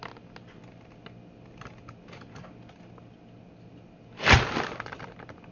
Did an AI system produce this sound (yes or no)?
no